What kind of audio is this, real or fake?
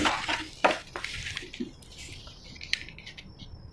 real